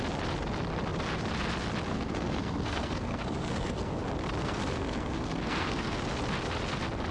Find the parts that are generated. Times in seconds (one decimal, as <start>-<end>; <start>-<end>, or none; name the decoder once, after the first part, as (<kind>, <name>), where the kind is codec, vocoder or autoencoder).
1.9-4.0 (codec, SNAC); 4.4-6.0